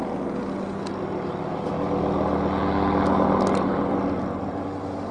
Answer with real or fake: real